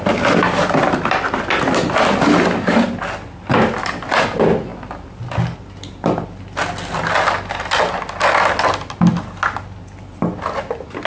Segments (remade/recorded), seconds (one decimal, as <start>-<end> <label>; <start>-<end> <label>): 0.0-11.1 recorded

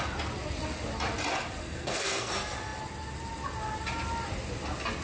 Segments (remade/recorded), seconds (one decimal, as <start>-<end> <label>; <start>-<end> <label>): 0.0-1.6 recorded; 1.6-2.3 remade; 2.3-5.0 recorded

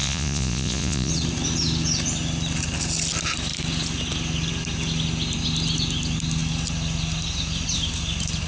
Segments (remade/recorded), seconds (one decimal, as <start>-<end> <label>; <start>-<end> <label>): 0.0-1.1 remade; 1.1-8.5 recorded

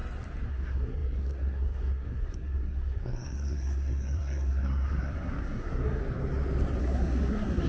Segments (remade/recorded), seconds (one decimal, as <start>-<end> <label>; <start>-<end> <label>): 0.0-0.5 recorded; 0.5-6.0 remade; 6.0-6.8 recorded; 6.8-7.7 remade

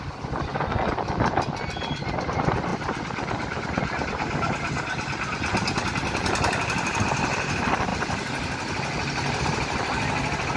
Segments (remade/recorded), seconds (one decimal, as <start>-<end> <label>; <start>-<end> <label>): 0.0-10.6 recorded

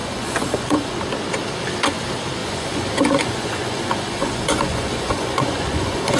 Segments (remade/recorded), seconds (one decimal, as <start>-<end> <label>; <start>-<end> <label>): 0.0-1.0 remade; 1.0-2.4 recorded; 2.4-6.2 remade